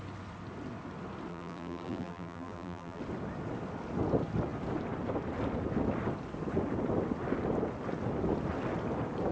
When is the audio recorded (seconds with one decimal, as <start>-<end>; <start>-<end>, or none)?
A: 0.0-1.3; 3.0-9.3